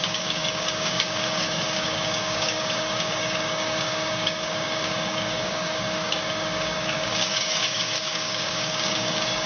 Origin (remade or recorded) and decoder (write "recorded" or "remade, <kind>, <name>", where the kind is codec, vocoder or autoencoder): remade, codec, DAC